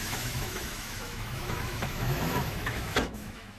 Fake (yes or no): yes